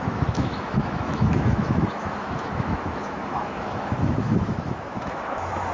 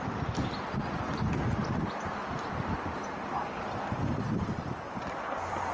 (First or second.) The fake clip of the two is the first